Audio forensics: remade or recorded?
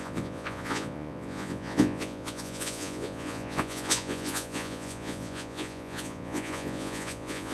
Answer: remade